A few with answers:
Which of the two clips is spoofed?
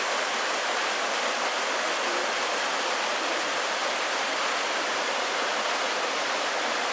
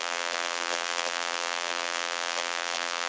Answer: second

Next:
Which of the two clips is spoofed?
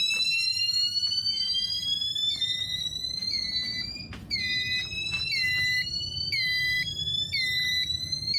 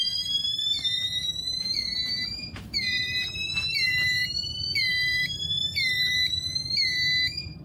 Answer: second